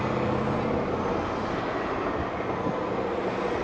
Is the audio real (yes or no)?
yes